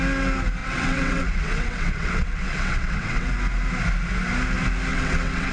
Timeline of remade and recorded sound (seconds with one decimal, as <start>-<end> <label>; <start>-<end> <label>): 0.0-0.6 recorded; 0.6-3.3 remade; 3.3-4.9 recorded; 4.9-5.5 remade

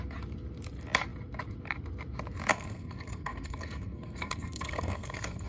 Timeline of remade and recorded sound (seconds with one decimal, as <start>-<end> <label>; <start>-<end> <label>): 0.0-2.5 recorded; 2.5-5.5 remade

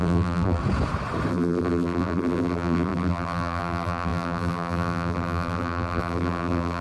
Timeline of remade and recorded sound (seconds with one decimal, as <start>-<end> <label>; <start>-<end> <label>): 0.0-0.6 remade; 0.6-1.3 recorded; 1.3-6.8 remade

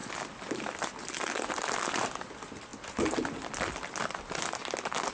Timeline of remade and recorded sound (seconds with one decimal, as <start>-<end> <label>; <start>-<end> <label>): 0.0-2.7 recorded; 2.7-3.2 remade; 3.2-5.1 recorded

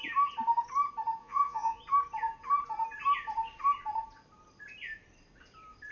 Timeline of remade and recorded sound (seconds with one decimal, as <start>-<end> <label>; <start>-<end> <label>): 0.0-1.2 recorded; 1.2-1.8 remade; 1.8-5.9 recorded

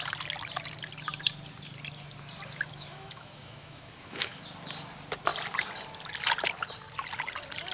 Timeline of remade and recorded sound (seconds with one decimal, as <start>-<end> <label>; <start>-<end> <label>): 0.0-2.7 recorded; 2.7-4.4 remade; 4.4-7.7 recorded

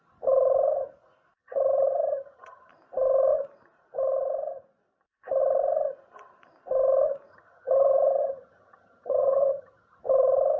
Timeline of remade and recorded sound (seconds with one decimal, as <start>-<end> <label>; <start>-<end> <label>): 0.0-1.4 recorded; 1.4-2.7 remade; 2.7-7.3 recorded; 7.3-10.0 remade; 10.0-10.6 recorded

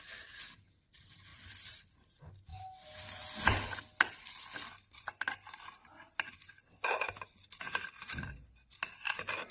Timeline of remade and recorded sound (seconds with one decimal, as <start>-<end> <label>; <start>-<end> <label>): 0.0-1.3 recorded; 1.3-2.1 remade; 2.1-9.5 recorded